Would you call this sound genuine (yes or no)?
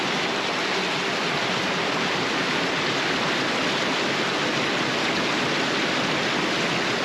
yes